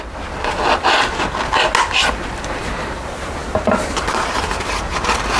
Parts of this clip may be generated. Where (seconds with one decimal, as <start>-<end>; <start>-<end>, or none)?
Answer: none